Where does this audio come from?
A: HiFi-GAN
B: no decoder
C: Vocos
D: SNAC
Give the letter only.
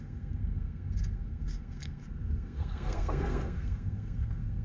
D